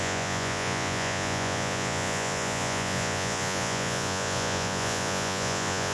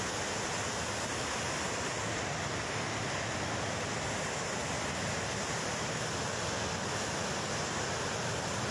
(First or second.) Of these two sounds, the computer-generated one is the first